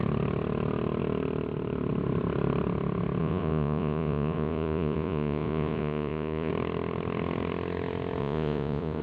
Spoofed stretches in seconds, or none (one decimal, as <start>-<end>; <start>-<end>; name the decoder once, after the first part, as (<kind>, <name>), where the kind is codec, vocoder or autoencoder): 3.2-6.5 (vocoder, Vocos); 8.2-9.0